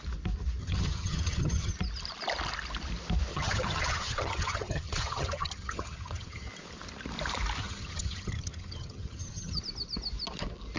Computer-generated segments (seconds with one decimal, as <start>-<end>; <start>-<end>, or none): 0.6-1.7; 3.3-6.5; 7.6-9.6

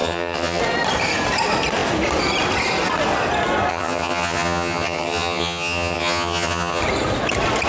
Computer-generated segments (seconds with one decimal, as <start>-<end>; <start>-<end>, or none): 0.0-0.6; 3.7-6.8

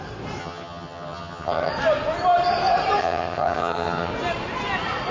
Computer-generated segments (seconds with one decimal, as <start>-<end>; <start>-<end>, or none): 0.4-1.7; 3.0-4.1